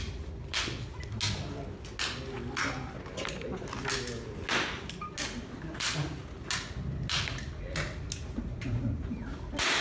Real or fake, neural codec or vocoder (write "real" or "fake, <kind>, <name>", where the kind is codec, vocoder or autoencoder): real